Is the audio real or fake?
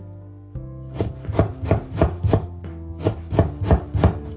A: real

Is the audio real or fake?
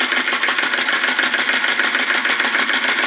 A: real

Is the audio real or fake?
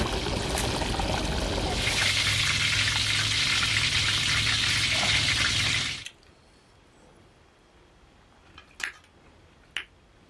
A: real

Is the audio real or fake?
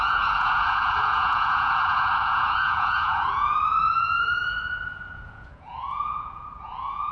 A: fake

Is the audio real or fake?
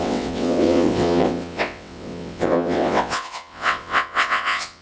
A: fake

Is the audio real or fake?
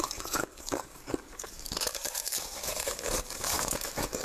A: fake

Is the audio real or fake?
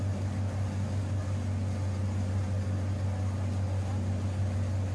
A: real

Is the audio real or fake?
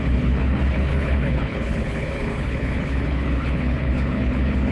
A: fake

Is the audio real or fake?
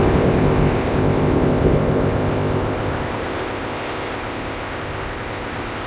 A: fake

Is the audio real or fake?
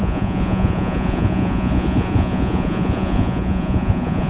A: fake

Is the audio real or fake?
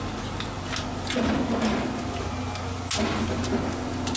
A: real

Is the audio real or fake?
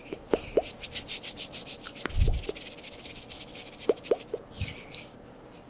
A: real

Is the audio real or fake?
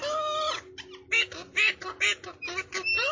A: real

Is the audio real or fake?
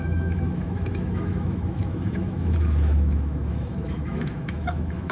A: fake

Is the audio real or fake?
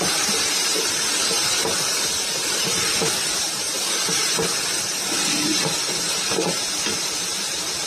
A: fake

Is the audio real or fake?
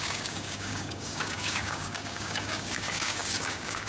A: fake